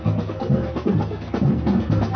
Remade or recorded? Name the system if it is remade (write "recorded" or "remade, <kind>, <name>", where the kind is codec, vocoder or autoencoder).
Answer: remade, codec, SNAC